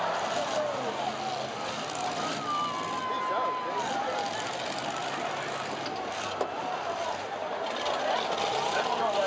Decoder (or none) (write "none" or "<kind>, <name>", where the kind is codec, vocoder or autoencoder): none